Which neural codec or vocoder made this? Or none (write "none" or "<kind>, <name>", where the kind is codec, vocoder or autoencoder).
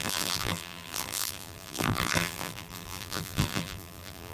vocoder, BigVGAN v2